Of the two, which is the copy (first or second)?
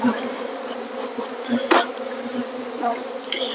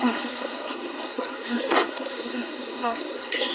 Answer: second